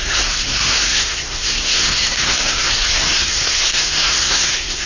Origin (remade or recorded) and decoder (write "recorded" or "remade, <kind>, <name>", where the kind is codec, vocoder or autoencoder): remade, codec, SNAC